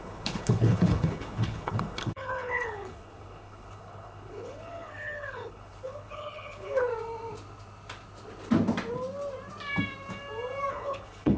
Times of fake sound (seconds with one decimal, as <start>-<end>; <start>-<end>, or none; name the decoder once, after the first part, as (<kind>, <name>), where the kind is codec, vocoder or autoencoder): 0.0-6.9 (codec, HILCodec); 10.7-11.4